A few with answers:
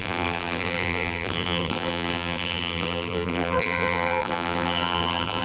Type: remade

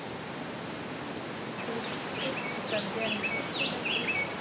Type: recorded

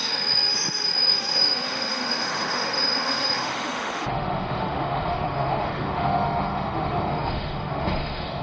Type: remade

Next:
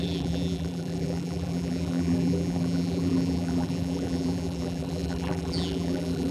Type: remade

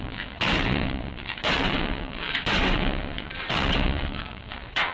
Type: remade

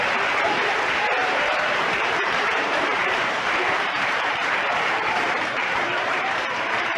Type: remade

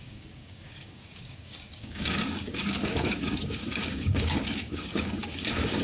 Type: remade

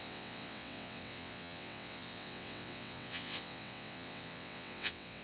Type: remade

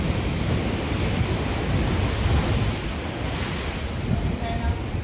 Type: recorded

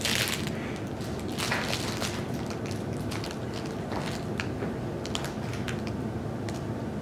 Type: recorded